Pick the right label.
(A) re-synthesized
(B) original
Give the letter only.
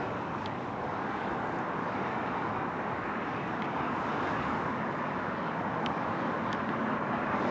A